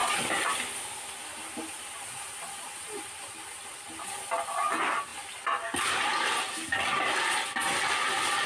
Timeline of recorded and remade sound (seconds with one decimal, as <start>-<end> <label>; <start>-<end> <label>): 0.0-8.5 recorded